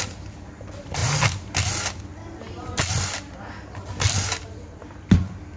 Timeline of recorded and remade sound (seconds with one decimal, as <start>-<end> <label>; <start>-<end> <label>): 0.0-5.6 recorded